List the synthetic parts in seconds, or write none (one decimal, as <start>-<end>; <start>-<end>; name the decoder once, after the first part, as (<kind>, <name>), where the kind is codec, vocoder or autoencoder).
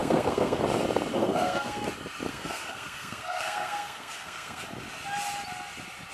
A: 0.0-0.6 (codec, SNAC); 1.1-1.9; 2.3-4.6